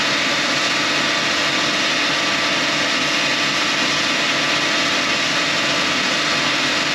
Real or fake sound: real